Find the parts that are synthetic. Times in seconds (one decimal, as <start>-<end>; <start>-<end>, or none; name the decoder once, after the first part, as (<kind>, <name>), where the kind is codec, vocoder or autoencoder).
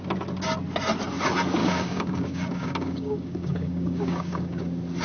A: 1.6-4.6 (codec, DAC)